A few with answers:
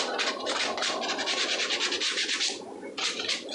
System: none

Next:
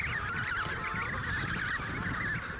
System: none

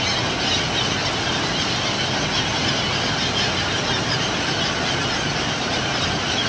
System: none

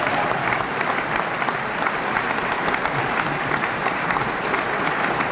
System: none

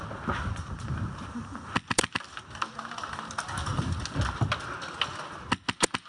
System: none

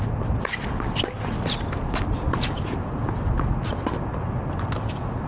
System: none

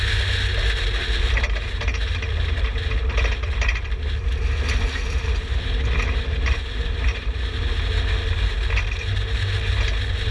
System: none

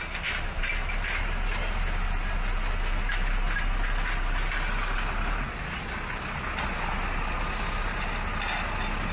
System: none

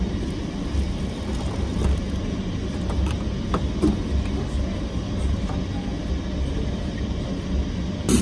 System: none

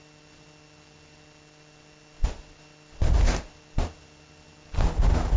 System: none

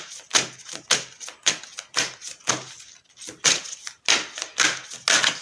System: none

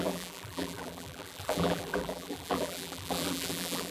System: vocoder, BigVGAN v2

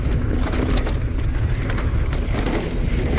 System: none